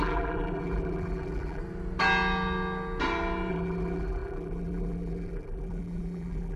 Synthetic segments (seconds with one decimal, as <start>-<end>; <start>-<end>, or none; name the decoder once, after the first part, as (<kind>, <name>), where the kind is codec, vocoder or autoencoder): 0.0-1.6 (vocoder, BigVGAN v2); 3.5-6.6